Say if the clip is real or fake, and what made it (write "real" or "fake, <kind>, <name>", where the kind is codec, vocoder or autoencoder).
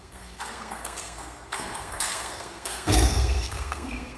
fake, codec, SNAC